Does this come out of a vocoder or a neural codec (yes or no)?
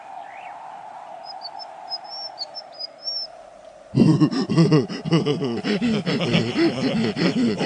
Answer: no